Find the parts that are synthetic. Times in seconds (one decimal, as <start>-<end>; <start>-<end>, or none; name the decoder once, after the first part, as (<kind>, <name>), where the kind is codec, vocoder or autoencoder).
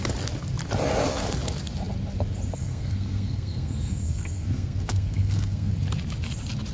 2.5-5.7 (codec, SNAC)